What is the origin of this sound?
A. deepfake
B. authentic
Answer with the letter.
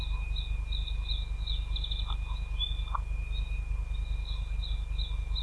B